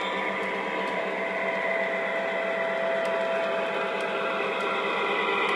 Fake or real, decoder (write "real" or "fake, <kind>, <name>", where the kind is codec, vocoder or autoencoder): real